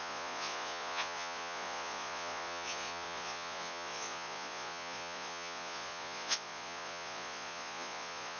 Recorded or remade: remade